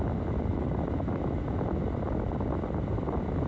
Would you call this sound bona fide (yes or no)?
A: yes